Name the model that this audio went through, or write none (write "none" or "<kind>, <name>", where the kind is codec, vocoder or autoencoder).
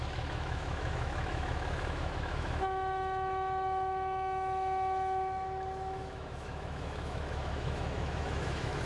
autoencoder, DAC-VAE